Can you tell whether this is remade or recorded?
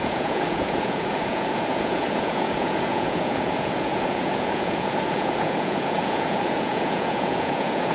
remade